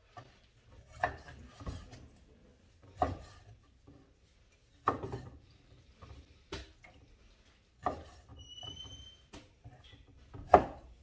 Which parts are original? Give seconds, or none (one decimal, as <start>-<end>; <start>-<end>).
0.0-11.0